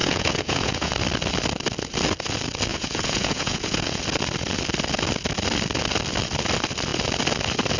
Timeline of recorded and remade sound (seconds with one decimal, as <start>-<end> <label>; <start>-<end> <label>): 0.0-0.9 remade; 0.9-2.7 recorded; 2.7-4.0 remade; 4.0-7.8 recorded